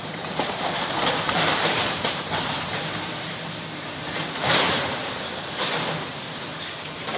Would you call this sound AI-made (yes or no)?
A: yes